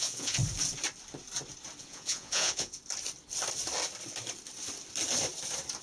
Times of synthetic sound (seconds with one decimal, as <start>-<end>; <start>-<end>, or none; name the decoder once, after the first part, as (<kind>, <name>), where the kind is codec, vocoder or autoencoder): 0.0-0.4 (vocoder, Vocos); 1.8-2.8